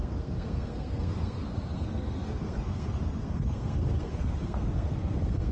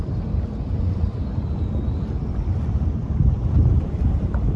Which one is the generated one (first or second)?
first